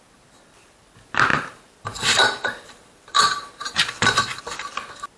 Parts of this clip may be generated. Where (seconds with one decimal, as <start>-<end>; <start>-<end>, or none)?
1.3-4.4